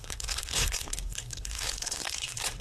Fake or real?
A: fake